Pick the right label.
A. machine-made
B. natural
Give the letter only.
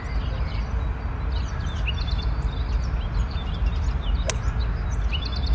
B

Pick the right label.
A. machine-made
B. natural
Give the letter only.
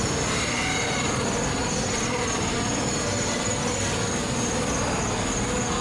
B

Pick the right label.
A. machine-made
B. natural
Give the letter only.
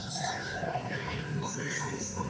A